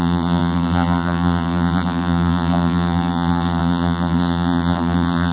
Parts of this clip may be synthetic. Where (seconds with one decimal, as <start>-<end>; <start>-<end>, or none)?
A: 0.0-5.3